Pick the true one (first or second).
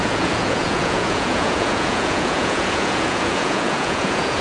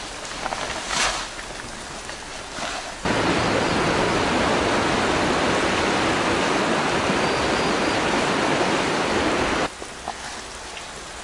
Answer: second